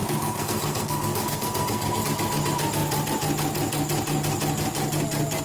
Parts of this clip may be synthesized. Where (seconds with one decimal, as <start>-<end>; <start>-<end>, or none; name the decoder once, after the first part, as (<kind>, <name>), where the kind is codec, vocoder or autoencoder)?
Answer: 0.0-2.0 (codec, SNAC)